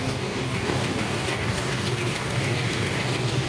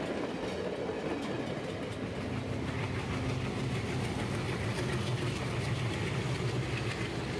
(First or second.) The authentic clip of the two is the second